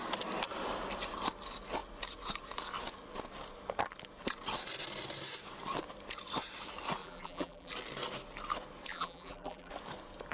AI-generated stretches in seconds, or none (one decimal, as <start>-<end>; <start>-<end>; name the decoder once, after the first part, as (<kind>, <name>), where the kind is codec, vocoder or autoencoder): 7.0-7.7 (vocoder, BigVGAN v2); 8.9-9.7